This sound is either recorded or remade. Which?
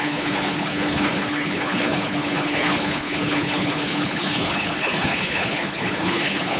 remade